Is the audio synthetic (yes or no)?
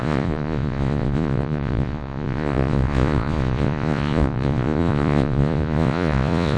yes